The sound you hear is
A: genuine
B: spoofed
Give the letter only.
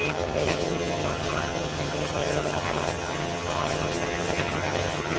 B